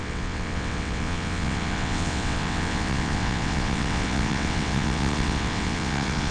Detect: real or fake fake